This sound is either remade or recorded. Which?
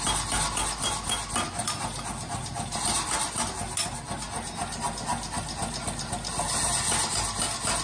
recorded